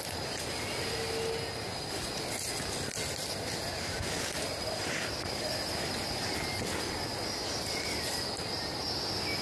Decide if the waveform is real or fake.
real